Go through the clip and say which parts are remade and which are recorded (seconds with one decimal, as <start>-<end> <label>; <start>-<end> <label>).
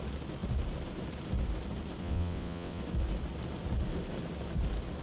0.0-2.0 recorded; 2.0-2.8 remade; 2.8-5.0 recorded